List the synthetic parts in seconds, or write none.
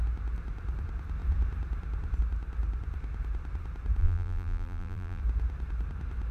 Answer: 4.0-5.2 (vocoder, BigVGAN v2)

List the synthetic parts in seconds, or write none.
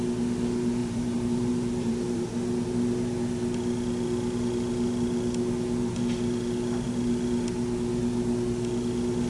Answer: 0.8-2.2 (vocoder, BigVGAN v2)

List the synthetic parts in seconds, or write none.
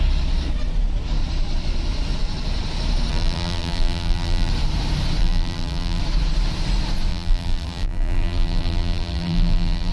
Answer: 3.1-4.5 (vocoder, BigVGAN v2); 5.2-6.0; 7.1-9.9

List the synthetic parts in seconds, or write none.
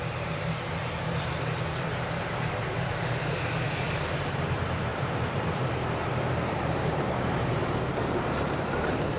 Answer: 0.0-9.2 (vocoder, BigVGAN v2)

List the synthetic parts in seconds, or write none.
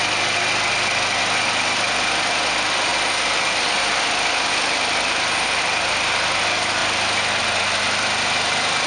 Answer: none